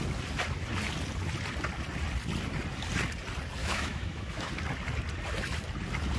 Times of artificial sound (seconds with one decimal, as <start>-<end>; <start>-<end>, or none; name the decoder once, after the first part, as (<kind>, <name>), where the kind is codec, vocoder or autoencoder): 3.6-4.5 (autoencoder, DAC-VAE)